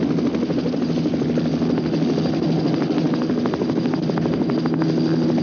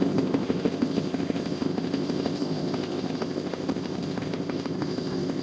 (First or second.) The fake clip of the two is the second